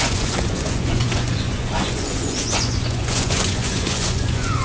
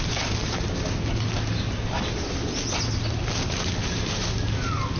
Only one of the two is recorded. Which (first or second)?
second